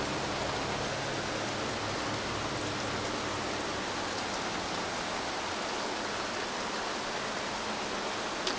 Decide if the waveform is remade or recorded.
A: recorded